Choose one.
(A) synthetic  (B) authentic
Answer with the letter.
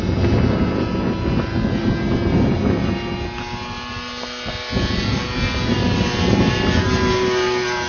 B